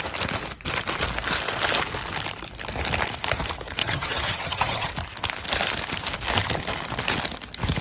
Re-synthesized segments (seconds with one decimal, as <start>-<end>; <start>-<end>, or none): 3.8-4.9